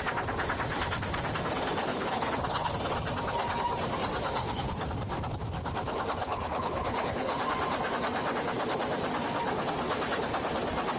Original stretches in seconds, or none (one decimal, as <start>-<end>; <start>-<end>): 0.0-1.9; 2.7-4.4; 4.9-6.2; 7.4-11.0